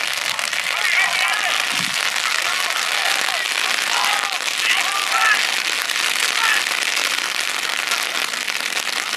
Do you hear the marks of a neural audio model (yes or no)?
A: no